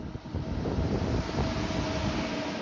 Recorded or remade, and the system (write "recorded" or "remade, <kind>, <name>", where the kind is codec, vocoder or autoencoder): recorded